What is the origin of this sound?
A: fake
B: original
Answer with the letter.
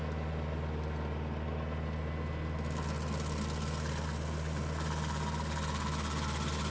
B